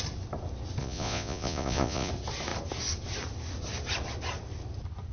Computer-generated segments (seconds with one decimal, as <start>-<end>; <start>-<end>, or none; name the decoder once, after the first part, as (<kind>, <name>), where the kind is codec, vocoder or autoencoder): 0.8-2.1 (vocoder, Vocos)